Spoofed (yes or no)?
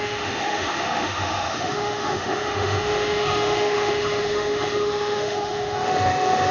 yes